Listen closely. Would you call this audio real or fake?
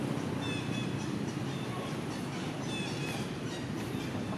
real